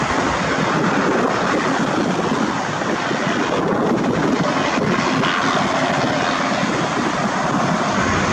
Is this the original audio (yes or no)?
yes